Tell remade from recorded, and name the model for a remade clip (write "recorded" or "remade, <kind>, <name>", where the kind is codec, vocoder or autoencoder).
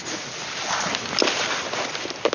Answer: recorded